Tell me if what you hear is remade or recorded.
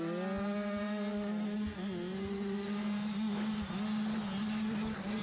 recorded